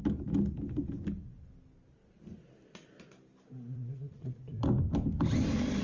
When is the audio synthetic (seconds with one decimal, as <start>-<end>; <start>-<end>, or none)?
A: 2.0-5.8